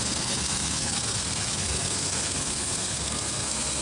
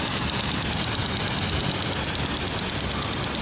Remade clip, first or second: first